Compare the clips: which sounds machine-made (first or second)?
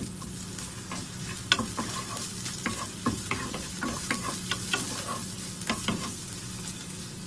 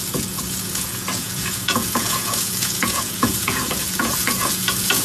second